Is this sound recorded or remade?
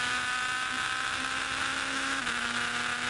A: recorded